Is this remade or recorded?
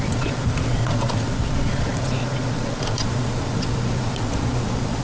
remade